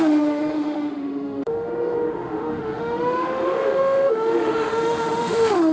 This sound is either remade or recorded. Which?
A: remade